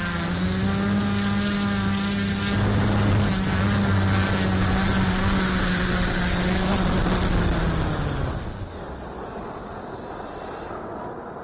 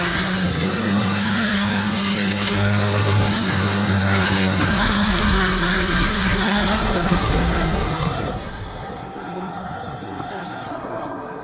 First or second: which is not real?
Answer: second